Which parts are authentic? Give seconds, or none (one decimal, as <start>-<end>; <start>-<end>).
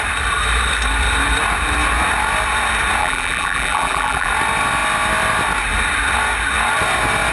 0.0-3.0; 4.3-7.3